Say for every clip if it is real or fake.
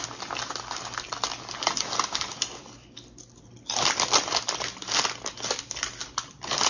real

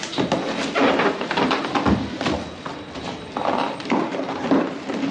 real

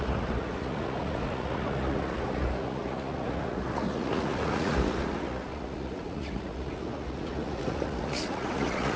fake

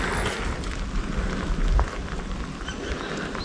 real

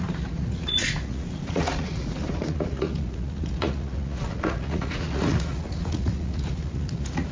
fake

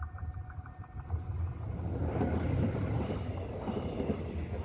real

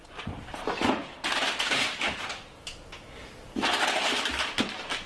real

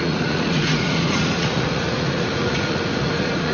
fake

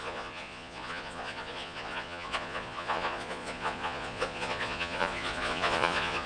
fake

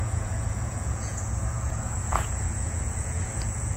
fake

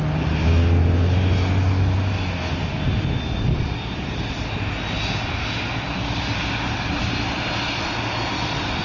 real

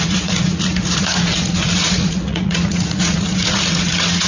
fake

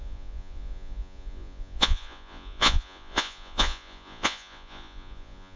fake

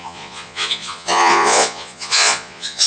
fake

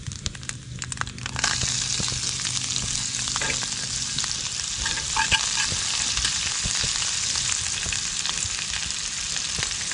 real